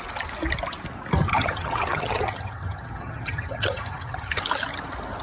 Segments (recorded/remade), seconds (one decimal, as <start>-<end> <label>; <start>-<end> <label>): 0.0-1.3 recorded; 1.3-4.4 remade; 4.4-5.2 recorded